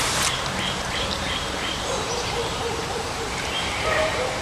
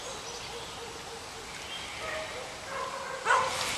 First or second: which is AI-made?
first